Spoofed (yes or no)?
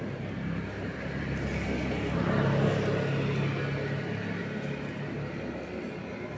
no